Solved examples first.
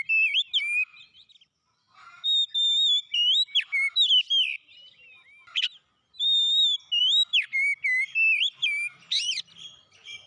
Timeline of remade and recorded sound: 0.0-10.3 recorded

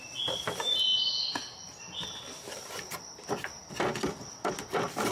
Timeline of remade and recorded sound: 0.0-5.1 recorded

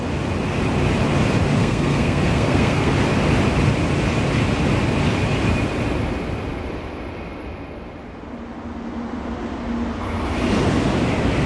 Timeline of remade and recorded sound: 0.0-1.6 recorded; 1.6-2.9 remade; 2.9-11.5 recorded

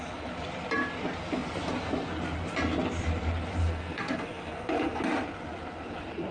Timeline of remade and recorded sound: 0.0-3.6 recorded; 3.6-5.0 remade; 5.0-6.3 recorded

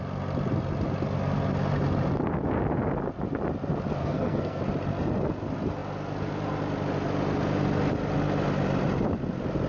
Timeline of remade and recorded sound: 0.0-4.0 recorded; 4.0-4.6 remade; 4.6-9.7 recorded

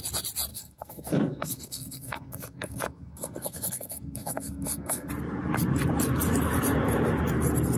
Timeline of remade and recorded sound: 0.0-0.5 recorded; 0.5-5.1 remade; 5.1-7.8 recorded

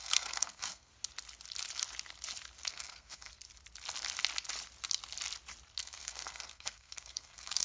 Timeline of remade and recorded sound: 0.0-0.9 remade; 0.9-2.7 recorded; 2.7-3.3 remade; 3.3-5.8 recorded; 5.8-7.6 remade